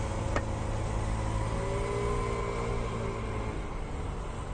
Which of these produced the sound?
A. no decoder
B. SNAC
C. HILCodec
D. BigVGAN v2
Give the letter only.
A